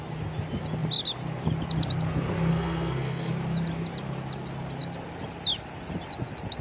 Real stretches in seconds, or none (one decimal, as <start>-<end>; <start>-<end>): 0.0-2.5; 3.3-6.6